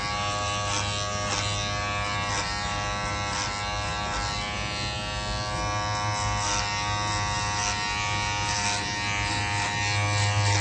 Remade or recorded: recorded